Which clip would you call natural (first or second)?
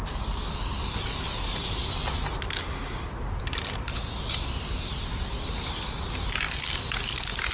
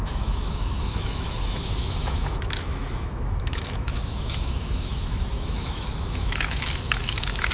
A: first